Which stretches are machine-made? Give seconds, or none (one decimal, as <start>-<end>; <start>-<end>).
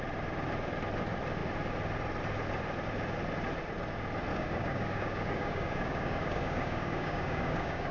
4.3-7.9